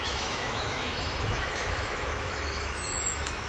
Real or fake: fake